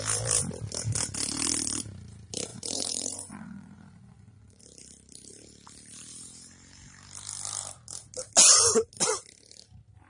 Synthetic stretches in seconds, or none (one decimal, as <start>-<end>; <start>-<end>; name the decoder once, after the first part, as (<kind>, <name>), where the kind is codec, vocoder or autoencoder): 2.5-4.6 (vocoder, Vocos)